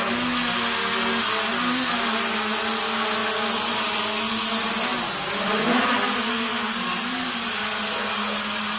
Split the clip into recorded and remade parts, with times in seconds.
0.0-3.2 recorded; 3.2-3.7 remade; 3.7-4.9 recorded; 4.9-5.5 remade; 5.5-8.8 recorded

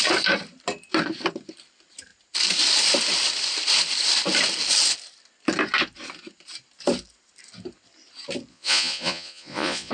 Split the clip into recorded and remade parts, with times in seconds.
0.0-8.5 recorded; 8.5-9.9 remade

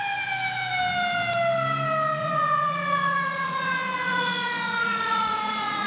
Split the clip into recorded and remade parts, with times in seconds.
0.0-2.2 recorded; 2.2-5.9 remade

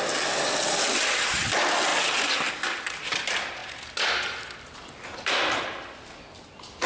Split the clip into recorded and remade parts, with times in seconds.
0.0-6.9 recorded

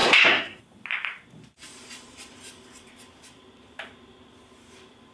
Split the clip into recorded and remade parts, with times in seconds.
0.0-0.6 remade; 0.6-5.1 recorded

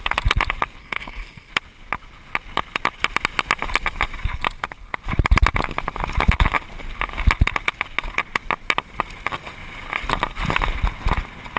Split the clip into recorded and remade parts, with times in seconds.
0.0-0.8 recorded; 0.8-1.5 remade; 1.5-11.6 recorded